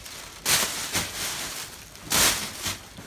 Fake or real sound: real